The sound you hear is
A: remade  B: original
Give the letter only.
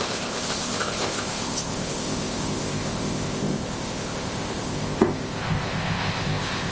A